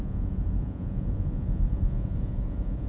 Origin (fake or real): fake